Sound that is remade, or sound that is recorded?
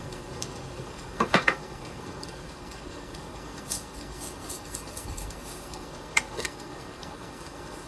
remade